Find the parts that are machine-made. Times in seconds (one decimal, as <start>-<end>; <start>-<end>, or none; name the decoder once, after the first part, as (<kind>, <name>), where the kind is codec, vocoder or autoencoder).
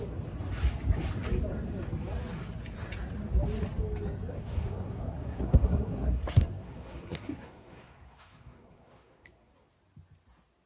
4.4-9.5 (codec, SNAC)